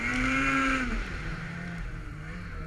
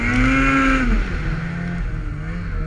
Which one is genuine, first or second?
second